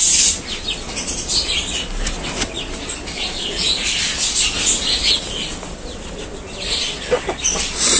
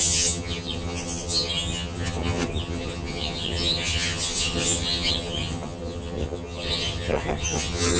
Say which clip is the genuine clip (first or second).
first